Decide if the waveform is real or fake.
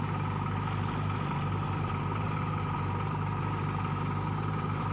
real